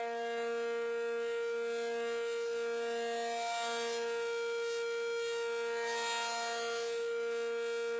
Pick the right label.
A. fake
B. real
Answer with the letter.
B